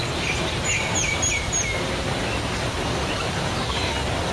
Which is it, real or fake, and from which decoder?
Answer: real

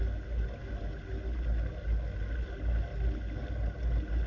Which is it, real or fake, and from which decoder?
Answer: real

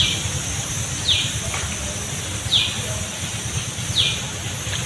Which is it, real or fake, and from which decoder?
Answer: real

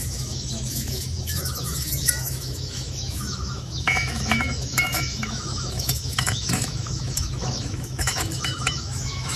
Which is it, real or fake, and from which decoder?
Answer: fake, autoencoder, DAC-VAE